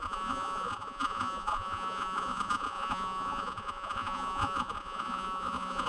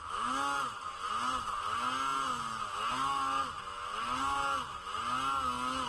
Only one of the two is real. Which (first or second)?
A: second